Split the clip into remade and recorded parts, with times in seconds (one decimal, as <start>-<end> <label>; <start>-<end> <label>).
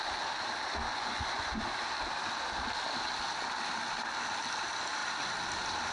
0.0-0.9 recorded; 0.9-1.6 remade; 1.6-5.9 recorded